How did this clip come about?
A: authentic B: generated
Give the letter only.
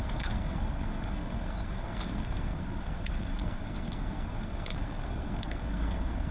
B